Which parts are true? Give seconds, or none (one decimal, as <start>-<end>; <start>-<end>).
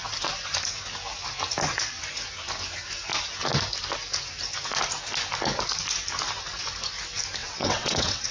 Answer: 0.0-7.4